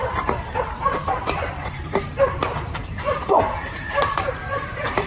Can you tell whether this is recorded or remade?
remade